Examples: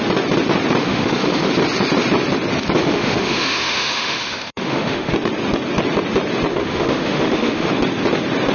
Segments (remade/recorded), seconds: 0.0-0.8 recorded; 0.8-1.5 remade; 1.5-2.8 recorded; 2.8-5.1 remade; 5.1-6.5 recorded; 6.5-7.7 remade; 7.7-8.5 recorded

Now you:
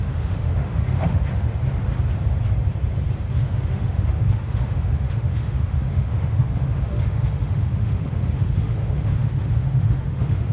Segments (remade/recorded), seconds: 0.0-1.5 remade; 1.5-3.3 recorded; 3.3-10.5 remade

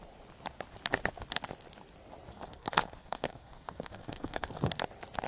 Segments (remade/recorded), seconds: 0.0-2.3 recorded; 2.3-4.7 remade; 4.7-5.3 recorded

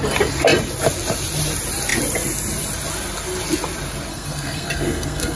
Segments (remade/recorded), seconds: 0.0-4.1 recorded; 4.1-5.4 remade

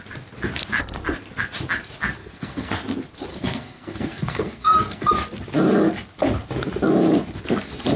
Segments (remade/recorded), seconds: 0.0-2.2 recorded; 2.2-2.7 remade; 2.7-3.3 recorded; 3.3-5.1 remade; 5.1-8.0 recorded

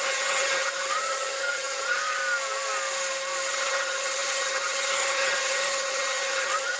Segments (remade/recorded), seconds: 0.0-2.2 remade; 2.2-3.5 recorded; 3.5-6.8 remade